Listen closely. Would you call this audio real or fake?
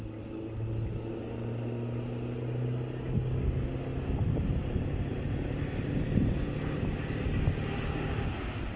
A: real